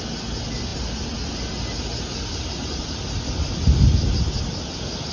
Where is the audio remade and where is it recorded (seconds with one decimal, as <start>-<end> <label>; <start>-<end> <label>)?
0.0-5.1 recorded